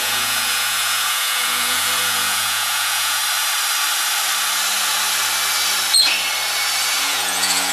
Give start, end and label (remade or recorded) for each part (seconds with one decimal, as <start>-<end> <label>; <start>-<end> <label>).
0.0-3.2 remade; 3.2-7.0 recorded; 7.0-7.7 remade